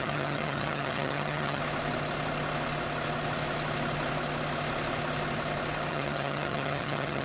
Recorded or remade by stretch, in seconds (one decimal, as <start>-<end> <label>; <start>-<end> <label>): 0.0-1.6 remade; 1.6-5.9 recorded; 5.9-7.2 remade